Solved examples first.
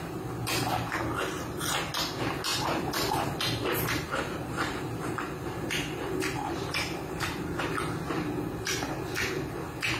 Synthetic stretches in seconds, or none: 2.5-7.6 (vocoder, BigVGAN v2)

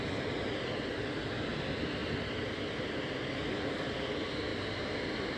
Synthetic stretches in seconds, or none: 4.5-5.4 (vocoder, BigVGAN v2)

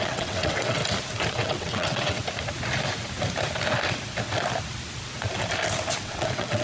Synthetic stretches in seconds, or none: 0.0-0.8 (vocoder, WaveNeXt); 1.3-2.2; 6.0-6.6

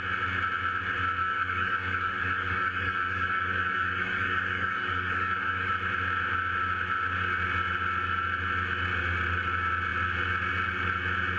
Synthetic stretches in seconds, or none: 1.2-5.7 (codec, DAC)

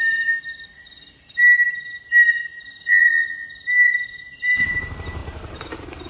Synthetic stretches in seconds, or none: 0.0-1.4 (vocoder, BigVGAN v2); 4.4-6.1

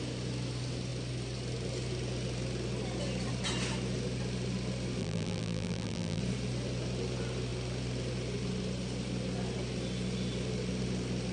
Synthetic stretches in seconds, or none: 5.0-6.2 (vocoder, BigVGAN v2)

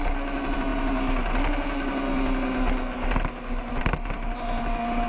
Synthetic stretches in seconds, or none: none